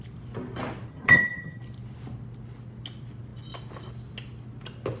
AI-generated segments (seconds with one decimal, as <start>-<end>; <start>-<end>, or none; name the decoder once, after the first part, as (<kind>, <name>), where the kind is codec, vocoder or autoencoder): 0.9-1.6 (vocoder, HiFi-GAN)